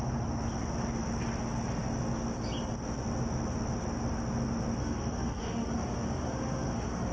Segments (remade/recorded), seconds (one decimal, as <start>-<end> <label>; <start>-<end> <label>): 0.0-4.8 recorded; 4.8-7.1 remade